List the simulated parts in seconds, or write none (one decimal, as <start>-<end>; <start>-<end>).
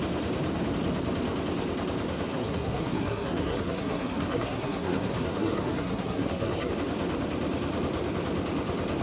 2.3-6.7